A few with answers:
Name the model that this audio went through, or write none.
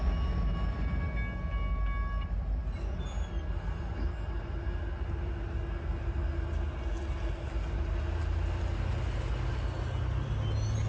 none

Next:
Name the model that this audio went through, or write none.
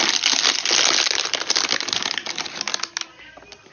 none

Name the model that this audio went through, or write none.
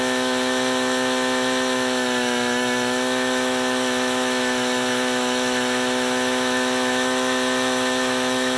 autoencoder, DAC-VAE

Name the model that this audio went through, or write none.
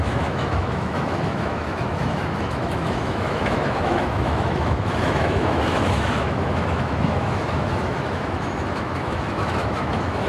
autoencoder, DAC-VAE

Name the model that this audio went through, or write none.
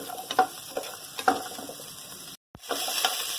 none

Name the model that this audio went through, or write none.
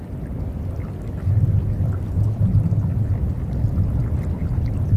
none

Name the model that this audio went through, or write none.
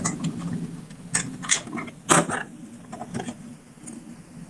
none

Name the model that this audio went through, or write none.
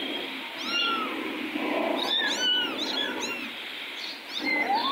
none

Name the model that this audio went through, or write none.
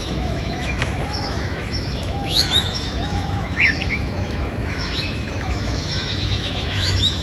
autoencoder, DAC-VAE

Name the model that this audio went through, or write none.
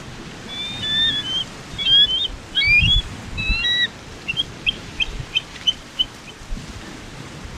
none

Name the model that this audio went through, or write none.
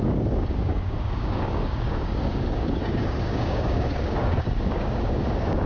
codec, DAC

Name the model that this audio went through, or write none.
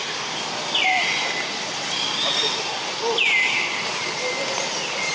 none